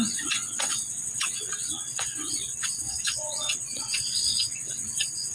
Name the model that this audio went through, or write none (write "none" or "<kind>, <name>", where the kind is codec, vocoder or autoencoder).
vocoder, WaveNeXt